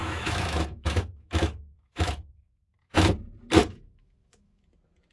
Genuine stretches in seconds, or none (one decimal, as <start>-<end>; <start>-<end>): 3.1-3.6; 4.6-5.1

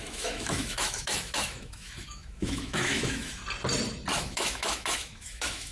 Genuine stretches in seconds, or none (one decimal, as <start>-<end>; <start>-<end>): 3.4-4.1

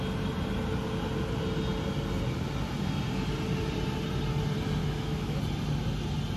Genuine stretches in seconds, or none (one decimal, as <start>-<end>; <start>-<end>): 0.0-4.8; 5.4-6.4

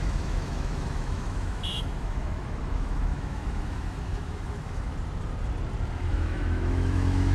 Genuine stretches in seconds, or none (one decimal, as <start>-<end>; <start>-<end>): 4.9-6.1

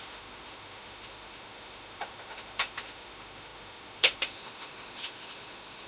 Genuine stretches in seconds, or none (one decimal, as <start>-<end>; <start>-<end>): none

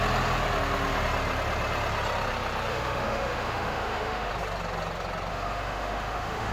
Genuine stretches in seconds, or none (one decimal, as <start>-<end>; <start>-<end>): 0.0-2.7; 4.3-5.3

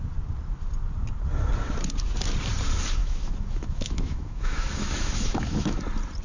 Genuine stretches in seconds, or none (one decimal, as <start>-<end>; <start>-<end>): 0.0-3.0; 5.8-6.2

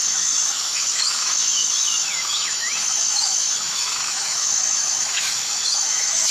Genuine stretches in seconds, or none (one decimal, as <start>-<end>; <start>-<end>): none